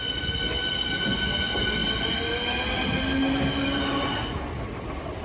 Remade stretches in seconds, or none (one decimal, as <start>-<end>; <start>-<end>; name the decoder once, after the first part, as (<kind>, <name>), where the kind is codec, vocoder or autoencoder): none